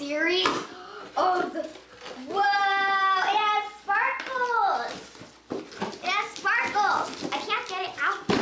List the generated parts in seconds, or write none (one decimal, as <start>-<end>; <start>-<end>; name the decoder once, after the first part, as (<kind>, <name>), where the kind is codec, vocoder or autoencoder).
0.5-1.0 (codec, DAC)